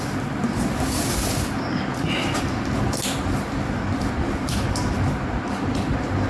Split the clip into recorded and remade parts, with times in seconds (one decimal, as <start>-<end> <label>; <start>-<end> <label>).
0.0-6.3 recorded